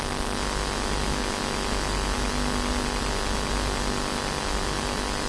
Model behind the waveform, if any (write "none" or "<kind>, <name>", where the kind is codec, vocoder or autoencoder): none